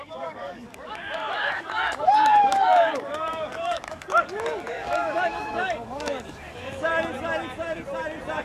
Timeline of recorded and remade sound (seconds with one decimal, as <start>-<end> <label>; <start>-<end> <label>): 0.0-6.9 remade; 6.9-8.4 recorded